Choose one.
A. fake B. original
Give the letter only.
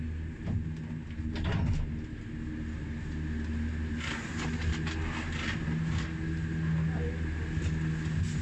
B